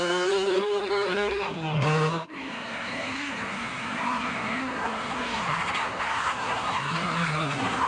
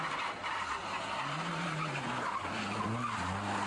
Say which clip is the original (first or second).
second